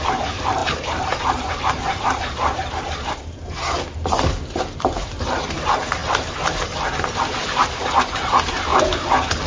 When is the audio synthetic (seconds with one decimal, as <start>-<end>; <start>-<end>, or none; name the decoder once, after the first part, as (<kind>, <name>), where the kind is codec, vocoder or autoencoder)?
0.0-6.0 (vocoder, BigVGAN v2); 8.0-8.7